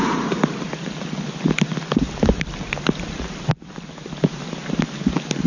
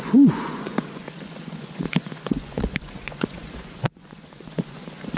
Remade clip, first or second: second